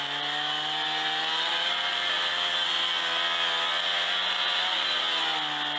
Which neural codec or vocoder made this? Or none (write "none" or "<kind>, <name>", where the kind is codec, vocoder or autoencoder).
none